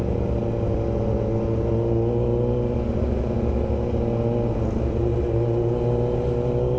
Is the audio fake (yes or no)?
no